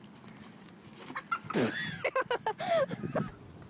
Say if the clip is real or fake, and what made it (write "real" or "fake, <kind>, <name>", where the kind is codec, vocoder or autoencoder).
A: real